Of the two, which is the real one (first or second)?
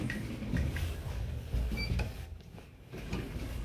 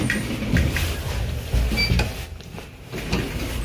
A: second